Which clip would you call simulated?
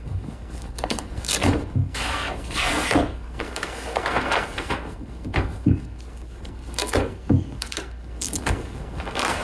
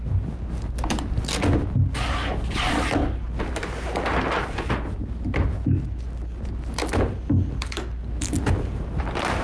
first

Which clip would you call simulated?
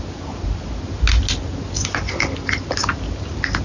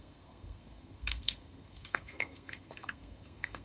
second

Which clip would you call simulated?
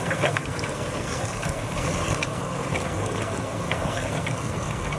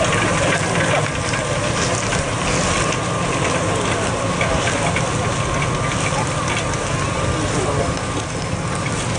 first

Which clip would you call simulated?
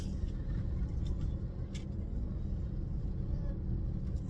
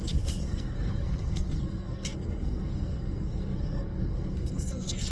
second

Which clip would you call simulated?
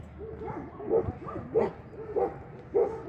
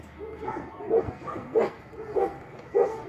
second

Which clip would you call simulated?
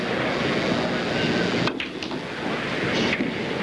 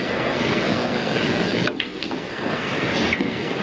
second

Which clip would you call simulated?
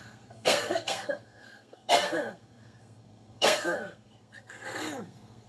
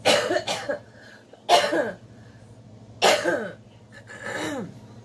first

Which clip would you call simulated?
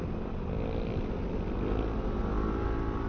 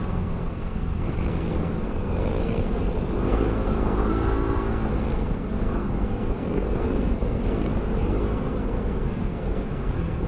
second